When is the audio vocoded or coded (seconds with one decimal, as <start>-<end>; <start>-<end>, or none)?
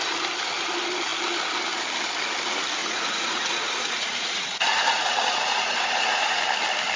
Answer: 2.8-6.4